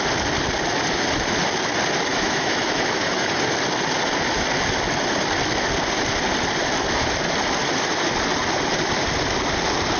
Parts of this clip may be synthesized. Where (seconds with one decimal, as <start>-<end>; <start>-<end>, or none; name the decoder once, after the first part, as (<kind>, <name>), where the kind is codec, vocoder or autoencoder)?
2.1-3.4 (autoencoder, DAC-VAE)